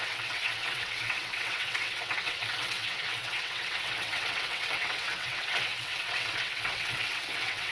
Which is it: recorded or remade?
remade